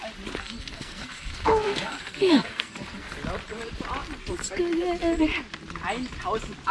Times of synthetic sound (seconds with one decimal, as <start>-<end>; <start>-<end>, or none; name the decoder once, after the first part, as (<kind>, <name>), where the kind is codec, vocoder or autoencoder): 0.4-3.2 (codec, SNAC)